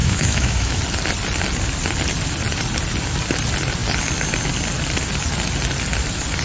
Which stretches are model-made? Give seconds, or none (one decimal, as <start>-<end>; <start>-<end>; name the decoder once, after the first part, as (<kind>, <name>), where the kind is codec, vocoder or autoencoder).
0.0-0.8 (autoencoder, DAC-VAE)